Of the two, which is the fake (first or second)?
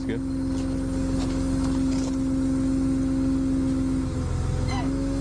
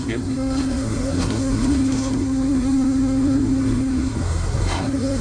second